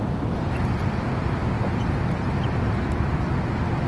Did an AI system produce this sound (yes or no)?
no